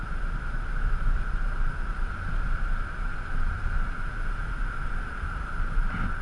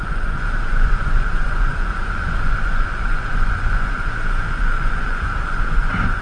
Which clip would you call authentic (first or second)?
first